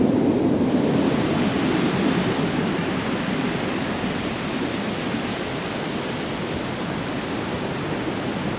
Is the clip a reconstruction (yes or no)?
no